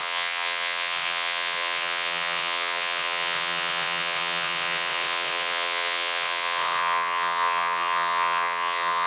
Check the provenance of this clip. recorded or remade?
remade